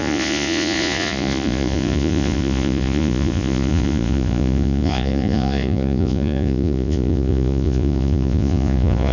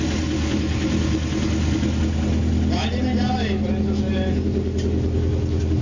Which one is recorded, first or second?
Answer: second